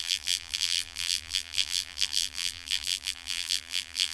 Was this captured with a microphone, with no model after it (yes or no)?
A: no